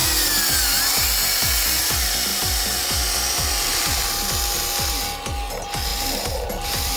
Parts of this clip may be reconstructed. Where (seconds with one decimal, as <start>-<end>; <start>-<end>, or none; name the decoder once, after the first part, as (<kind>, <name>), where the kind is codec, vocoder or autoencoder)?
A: 2.3-4.3 (vocoder, BigVGAN v2); 5.9-7.0